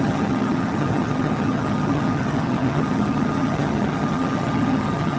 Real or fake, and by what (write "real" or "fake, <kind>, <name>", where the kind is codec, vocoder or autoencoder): fake, vocoder, HiFi-GAN